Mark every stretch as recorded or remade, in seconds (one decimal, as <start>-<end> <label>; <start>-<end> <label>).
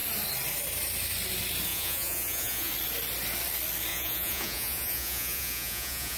0.0-1.7 recorded; 1.7-2.7 remade; 2.7-3.9 recorded; 3.9-6.2 remade